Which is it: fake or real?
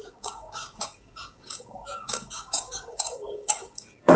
fake